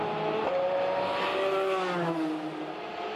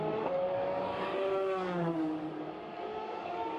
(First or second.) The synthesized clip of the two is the second